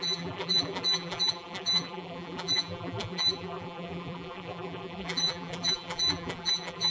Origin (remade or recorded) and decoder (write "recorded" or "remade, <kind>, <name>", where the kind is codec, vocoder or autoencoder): remade, vocoder, BigVGAN v2